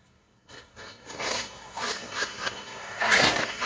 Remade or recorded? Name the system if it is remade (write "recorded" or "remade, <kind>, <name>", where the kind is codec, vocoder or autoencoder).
remade, codec, SNAC